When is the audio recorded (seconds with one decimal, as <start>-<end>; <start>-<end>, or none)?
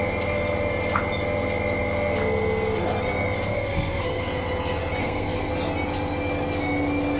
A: 0.0-3.5; 4.2-5.0; 5.5-7.2